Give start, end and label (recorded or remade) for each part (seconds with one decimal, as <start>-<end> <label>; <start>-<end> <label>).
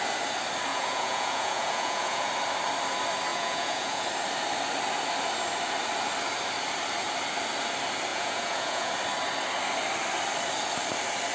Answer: 0.0-0.7 recorded; 0.7-2.3 remade; 2.3-3.3 recorded; 3.3-4.0 remade; 4.0-8.1 recorded; 8.1-8.9 remade; 8.9-11.3 recorded